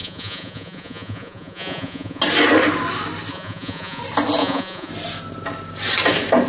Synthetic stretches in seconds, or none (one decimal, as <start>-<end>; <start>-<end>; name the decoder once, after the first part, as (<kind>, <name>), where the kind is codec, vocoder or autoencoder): 0.0-2.2 (vocoder, Vocos); 3.3-4.0; 4.4-4.9